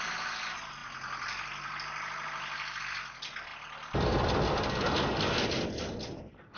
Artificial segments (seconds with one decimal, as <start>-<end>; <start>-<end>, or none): none